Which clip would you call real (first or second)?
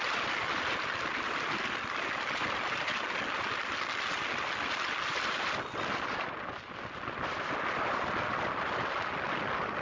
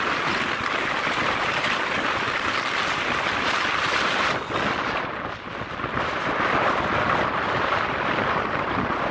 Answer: first